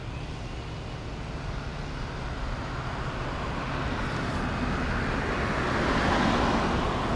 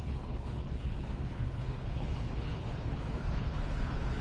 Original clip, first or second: first